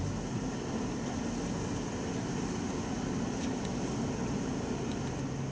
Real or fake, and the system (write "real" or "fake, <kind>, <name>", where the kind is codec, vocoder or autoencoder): real